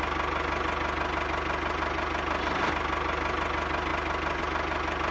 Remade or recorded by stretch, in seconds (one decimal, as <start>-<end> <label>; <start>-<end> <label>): 0.0-5.1 recorded